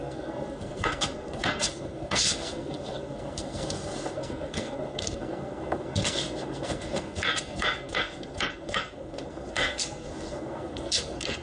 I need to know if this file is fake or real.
fake